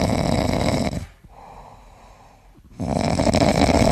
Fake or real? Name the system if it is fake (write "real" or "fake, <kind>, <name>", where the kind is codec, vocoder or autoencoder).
fake, vocoder, BigVGAN v2